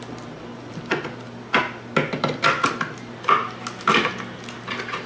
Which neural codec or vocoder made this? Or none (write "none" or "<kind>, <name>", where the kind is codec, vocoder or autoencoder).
none